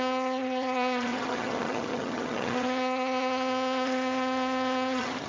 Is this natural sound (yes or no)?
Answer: no